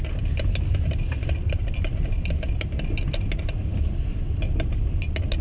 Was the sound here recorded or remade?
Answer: recorded